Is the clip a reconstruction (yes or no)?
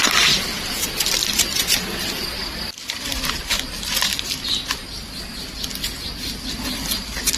no